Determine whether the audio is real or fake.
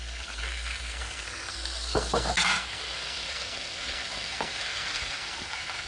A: fake